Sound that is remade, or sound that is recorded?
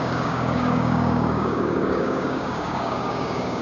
remade